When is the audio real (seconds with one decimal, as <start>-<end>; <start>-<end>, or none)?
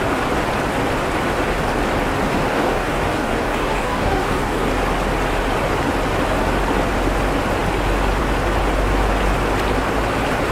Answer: 0.0-2.5; 4.7-10.5